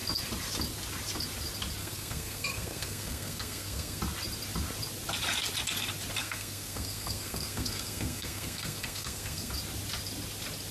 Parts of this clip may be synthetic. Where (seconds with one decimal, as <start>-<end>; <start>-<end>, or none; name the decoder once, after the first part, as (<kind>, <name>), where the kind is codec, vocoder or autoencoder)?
1.8-4.0 (codec, SNAC); 6.2-9.5